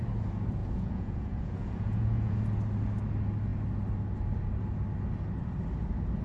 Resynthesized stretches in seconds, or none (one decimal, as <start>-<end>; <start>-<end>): 0.6-2.4